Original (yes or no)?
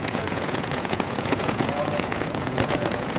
no